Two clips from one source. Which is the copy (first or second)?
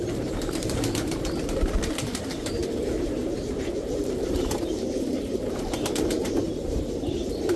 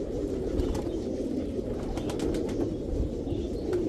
first